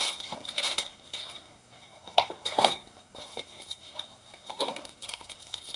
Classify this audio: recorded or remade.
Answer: remade